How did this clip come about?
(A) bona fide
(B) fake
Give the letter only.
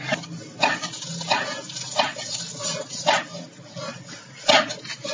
A